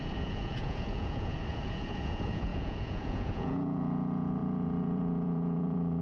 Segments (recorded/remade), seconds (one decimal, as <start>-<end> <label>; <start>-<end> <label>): 0.0-6.0 remade

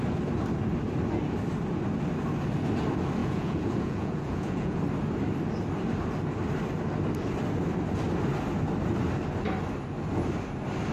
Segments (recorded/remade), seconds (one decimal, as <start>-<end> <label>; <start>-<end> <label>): 0.0-3.2 recorded; 3.2-4.8 remade; 4.8-10.9 recorded

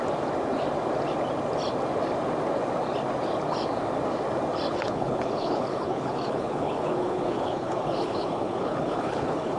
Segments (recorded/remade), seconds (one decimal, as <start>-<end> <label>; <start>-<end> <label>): 0.0-4.7 recorded; 4.7-9.6 remade

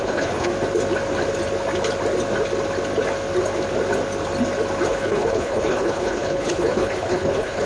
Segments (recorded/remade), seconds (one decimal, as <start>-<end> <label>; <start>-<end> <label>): 0.0-0.5 remade; 0.5-4.9 recorded; 4.9-7.7 remade